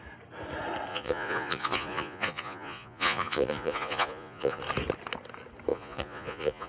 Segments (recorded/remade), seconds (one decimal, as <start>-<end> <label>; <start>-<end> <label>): 0.0-0.9 recorded; 0.9-4.6 remade; 4.6-5.7 recorded; 5.7-6.7 remade